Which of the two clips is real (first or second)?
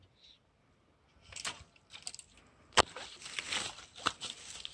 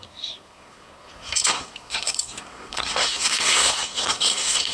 first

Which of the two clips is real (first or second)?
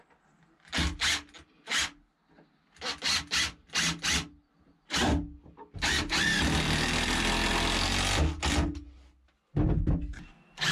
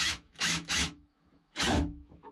first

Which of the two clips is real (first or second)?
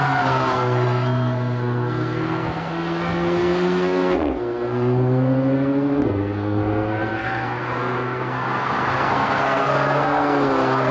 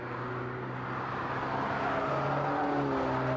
second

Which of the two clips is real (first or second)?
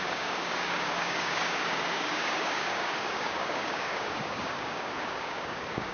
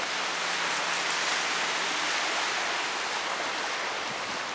second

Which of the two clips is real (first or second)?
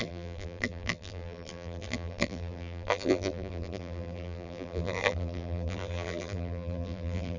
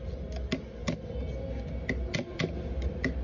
second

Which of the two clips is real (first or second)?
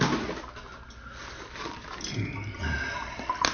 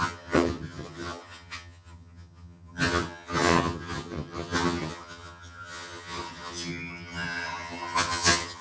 first